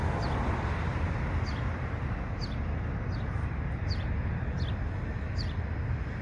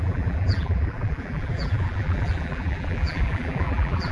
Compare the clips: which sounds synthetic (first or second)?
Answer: second